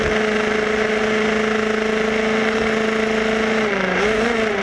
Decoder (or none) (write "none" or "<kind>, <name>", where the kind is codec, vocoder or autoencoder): none